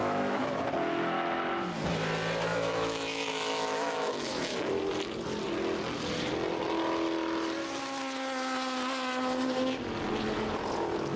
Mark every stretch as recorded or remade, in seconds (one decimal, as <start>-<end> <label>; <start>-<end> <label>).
0.0-0.6 remade; 0.6-2.5 recorded; 2.5-4.7 remade; 4.7-11.2 recorded